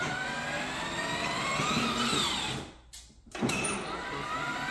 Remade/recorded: recorded